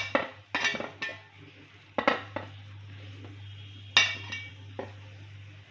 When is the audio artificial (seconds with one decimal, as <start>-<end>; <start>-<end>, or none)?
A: none